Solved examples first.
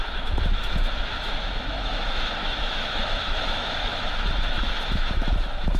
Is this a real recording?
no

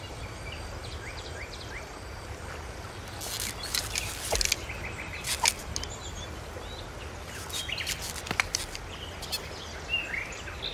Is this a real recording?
yes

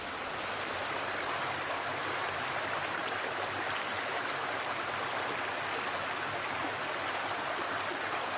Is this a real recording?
yes